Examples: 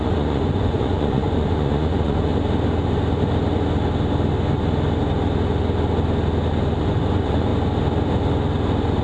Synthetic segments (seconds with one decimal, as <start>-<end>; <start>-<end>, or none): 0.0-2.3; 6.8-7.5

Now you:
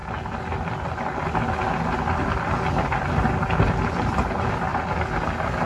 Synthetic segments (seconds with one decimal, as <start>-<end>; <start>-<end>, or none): none

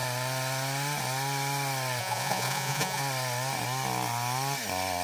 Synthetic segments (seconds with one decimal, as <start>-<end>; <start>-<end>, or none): 2.0-3.0